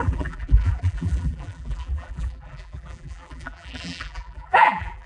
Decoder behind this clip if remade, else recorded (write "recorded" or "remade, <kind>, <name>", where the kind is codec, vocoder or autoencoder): remade, vocoder, BigVGAN v2